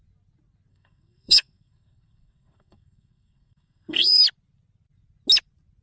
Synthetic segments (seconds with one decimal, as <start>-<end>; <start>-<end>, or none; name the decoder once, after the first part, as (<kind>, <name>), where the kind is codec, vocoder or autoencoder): 0.7-4.2 (codec, SNAC)